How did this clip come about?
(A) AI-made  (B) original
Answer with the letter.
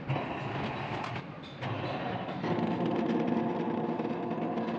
B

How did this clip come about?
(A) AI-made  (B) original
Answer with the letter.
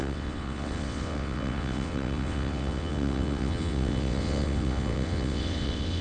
A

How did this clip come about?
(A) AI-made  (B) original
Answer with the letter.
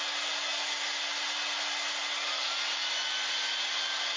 B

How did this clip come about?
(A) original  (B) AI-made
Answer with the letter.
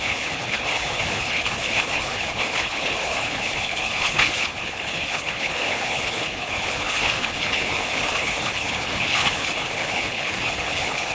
B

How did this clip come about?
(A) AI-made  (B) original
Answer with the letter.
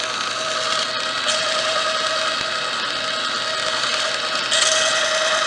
B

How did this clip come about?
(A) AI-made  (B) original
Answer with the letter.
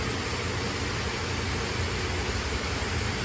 B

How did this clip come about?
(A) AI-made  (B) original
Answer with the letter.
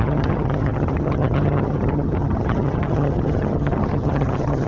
A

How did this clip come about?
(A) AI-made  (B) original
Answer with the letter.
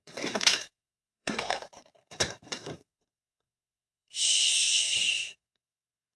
A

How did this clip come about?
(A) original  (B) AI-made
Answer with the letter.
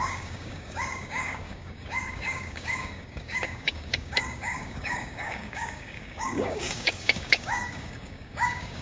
B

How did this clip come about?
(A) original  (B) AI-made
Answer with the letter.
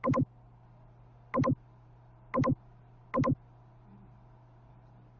A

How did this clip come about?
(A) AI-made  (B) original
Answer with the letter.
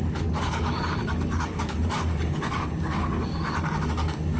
A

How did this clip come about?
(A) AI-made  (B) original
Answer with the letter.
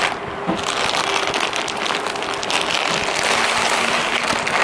B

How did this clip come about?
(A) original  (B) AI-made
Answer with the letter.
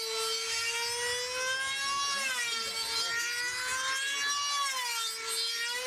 A